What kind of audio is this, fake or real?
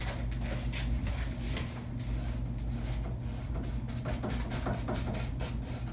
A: real